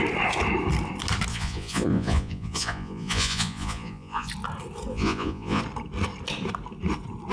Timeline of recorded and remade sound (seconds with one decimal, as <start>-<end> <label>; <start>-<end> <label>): 0.0-1.3 recorded; 1.3-4.3 remade; 4.3-4.9 recorded; 4.9-5.6 remade; 5.6-7.3 recorded